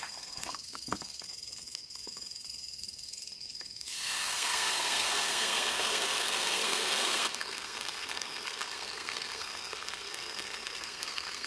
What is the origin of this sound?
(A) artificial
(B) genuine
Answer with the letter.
A